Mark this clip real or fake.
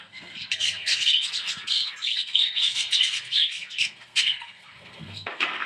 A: fake